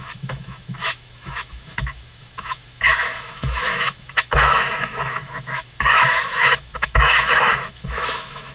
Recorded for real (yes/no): no